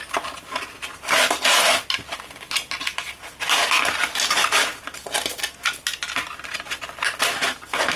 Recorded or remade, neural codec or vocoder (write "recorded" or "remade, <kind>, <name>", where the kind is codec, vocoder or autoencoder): recorded